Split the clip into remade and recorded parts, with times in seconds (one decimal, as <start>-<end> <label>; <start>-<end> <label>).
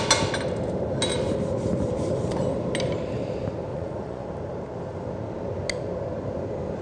0.0-3.7 recorded; 3.7-4.3 remade; 4.3-6.8 recorded